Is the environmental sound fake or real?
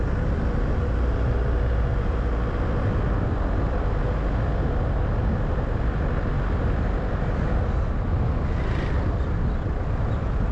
real